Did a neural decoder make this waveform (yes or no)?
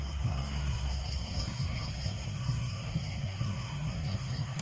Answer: yes